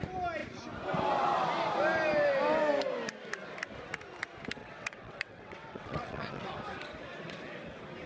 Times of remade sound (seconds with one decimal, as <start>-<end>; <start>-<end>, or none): 4.6-6.5